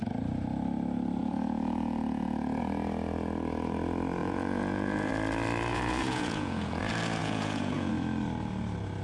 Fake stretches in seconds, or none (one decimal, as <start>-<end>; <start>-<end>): 1.2-2.6; 4.2-5.1; 5.7-6.8; 7.2-7.9